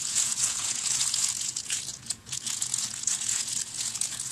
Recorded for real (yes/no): no